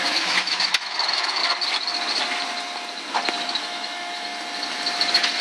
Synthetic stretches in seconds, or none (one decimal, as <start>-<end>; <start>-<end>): 0.0-1.4; 3.4-4.3